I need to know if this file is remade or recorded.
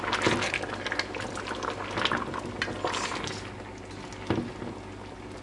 recorded